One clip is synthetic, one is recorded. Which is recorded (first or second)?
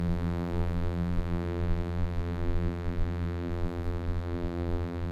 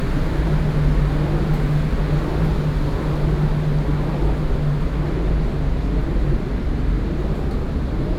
second